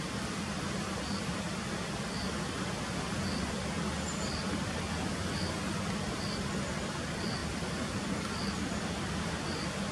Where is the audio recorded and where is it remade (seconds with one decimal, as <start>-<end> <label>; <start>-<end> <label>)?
0.0-9.9 recorded